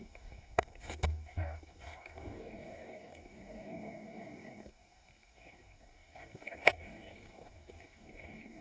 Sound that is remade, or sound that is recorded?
remade